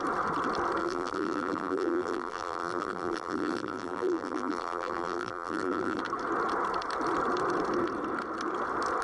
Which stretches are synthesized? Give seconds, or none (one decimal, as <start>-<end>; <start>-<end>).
0.8-6.0